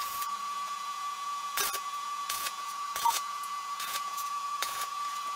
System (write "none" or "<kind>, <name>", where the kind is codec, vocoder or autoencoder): vocoder, Vocos